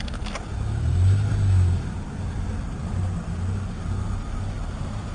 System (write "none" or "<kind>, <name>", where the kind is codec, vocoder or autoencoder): none